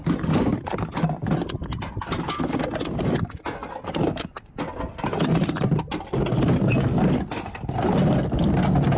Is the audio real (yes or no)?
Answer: yes